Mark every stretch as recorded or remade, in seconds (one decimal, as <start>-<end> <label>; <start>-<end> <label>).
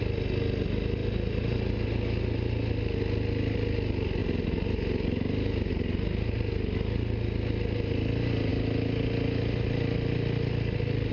0.0-11.1 recorded